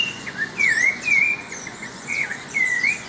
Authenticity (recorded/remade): remade